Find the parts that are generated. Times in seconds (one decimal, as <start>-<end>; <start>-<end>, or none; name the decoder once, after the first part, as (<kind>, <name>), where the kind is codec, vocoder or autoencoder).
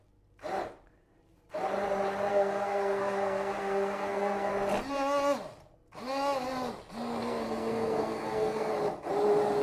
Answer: 2.3-4.5 (codec, SNAC); 7.2-8.7